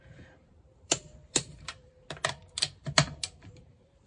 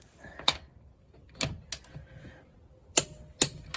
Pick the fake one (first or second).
first